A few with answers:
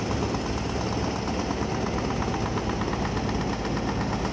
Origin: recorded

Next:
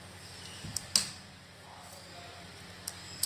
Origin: recorded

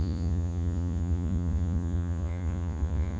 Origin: remade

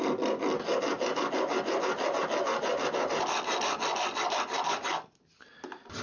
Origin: recorded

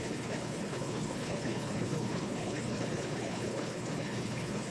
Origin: remade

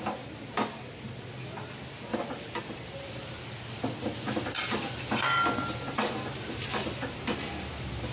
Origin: recorded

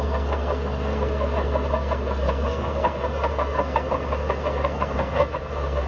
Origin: remade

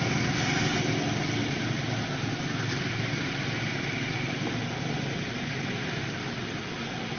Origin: recorded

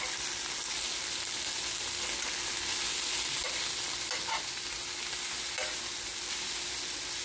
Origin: recorded